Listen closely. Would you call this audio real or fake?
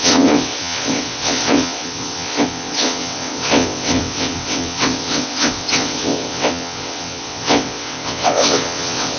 fake